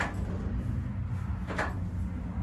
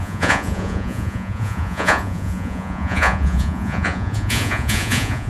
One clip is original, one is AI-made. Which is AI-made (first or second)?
second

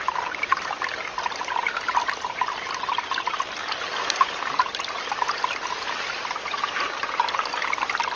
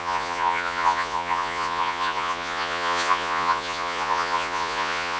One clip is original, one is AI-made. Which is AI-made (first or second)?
second